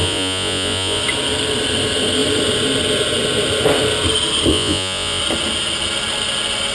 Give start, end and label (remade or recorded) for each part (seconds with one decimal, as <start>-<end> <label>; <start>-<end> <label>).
0.0-1.0 remade; 1.0-4.5 recorded; 4.5-5.2 remade; 5.2-6.7 recorded